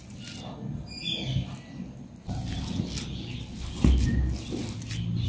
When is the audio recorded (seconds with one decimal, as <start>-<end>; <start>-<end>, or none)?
0.0-5.3